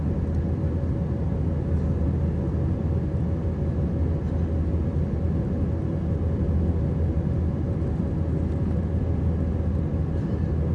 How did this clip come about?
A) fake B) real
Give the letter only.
B